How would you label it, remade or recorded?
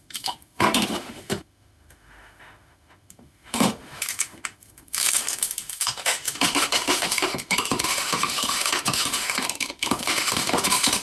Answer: remade